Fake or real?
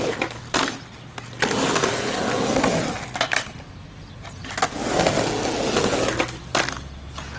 real